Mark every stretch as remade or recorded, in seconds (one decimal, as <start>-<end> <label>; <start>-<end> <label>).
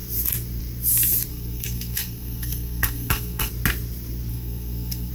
0.0-1.3 recorded; 1.3-3.5 remade; 3.5-4.3 recorded; 4.3-5.1 remade